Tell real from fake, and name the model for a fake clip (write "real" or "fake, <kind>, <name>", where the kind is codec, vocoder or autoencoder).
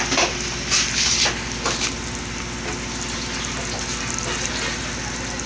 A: real